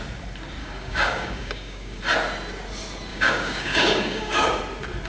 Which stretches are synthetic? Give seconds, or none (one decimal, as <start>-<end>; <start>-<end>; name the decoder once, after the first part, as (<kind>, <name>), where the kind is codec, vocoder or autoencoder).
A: 0.6-2.0 (codec, DAC); 3.1-4.6